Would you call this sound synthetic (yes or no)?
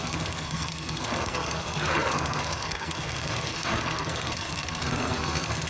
yes